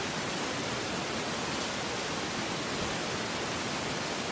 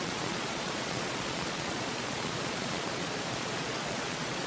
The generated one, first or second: second